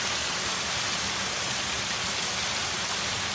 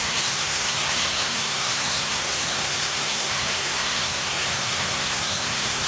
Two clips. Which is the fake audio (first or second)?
second